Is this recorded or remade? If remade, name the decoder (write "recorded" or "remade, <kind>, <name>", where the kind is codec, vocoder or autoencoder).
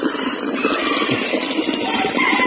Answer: recorded